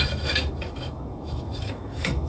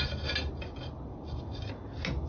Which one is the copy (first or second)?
first